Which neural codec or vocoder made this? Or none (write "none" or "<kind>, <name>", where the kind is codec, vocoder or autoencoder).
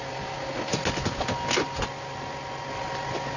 none